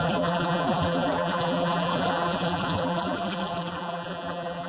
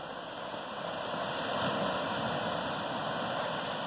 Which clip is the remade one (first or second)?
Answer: first